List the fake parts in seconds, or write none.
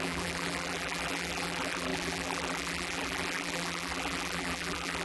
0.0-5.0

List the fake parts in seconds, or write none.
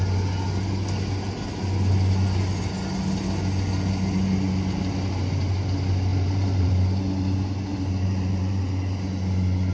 6.1-6.7; 7.7-8.6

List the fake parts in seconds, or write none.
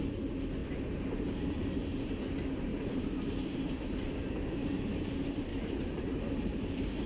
0.6-1.8; 2.7-4.1; 5.5-7.1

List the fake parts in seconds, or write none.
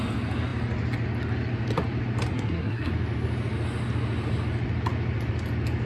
2.3-2.9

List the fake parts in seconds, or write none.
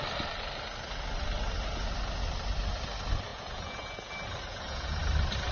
3.3-4.1; 4.5-5.0